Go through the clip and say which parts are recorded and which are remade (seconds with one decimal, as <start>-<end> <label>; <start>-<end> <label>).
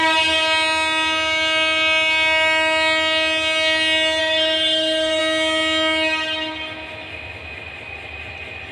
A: 0.0-4.2 recorded; 4.2-5.2 remade; 5.2-8.7 recorded